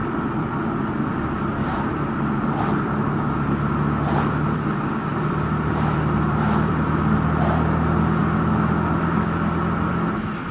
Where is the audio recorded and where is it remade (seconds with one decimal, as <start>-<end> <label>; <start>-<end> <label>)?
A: 0.0-1.7 remade; 1.7-5.1 recorded; 5.1-7.0 remade; 7.0-10.5 recorded